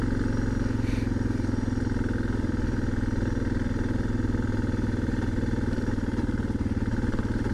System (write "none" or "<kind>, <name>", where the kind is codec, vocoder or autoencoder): none